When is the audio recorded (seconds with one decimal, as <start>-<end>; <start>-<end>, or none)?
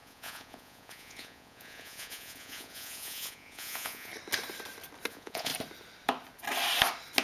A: 4.1-5.1; 5.5-7.2